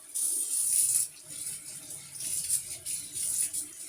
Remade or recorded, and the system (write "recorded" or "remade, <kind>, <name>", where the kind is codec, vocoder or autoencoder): recorded